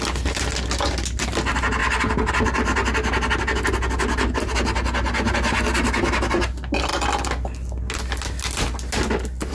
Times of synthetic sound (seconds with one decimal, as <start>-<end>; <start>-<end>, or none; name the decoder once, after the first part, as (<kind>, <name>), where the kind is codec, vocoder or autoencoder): none